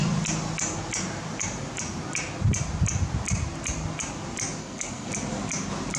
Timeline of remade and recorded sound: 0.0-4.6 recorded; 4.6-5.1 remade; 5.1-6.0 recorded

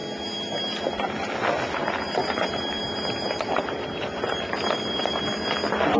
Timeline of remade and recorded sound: 0.0-1.8 recorded; 1.8-5.2 remade; 5.2-6.0 recorded

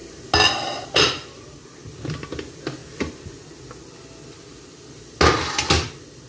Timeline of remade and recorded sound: 0.0-6.3 recorded

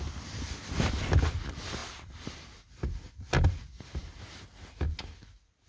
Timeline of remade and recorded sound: 0.0-5.7 recorded

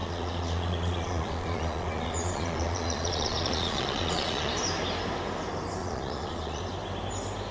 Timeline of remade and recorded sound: 0.0-4.5 remade; 4.5-5.8 recorded; 5.8-6.6 remade; 6.6-7.5 recorded